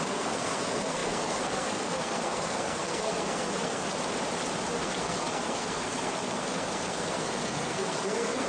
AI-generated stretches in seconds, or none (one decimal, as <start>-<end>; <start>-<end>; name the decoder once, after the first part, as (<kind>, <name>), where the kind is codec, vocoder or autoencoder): 0.0-3.8 (codec, SNAC); 4.8-8.5